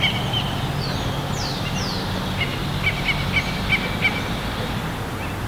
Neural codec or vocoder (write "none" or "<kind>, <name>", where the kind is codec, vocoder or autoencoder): none